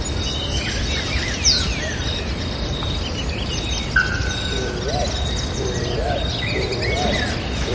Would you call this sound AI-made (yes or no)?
no